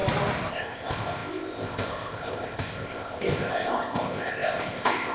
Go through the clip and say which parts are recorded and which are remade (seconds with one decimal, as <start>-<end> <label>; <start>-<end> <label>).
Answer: 0.0-0.5 recorded; 0.5-5.1 remade